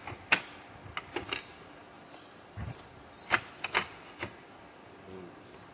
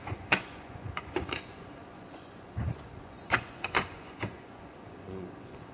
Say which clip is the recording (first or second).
first